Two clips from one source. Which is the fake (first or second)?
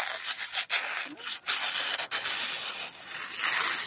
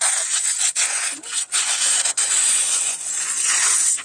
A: second